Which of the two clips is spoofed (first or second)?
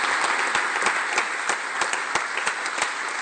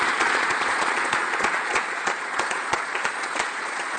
second